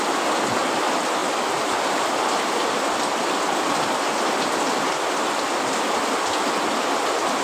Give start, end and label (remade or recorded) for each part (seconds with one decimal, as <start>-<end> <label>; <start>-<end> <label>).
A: 0.0-7.4 recorded